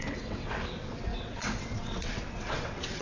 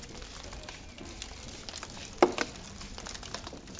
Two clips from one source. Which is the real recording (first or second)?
second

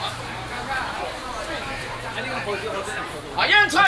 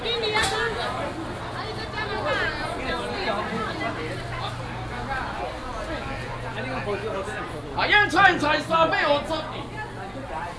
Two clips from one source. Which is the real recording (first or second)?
second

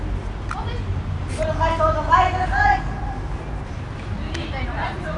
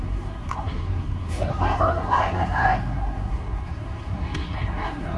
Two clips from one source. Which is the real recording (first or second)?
first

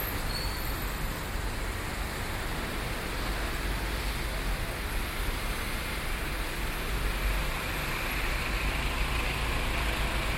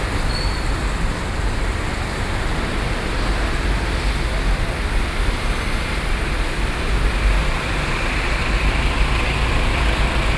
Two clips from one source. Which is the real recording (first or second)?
first